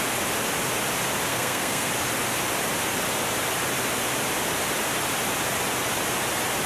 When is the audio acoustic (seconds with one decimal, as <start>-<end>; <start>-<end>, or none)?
0.0-1.3; 1.9-6.7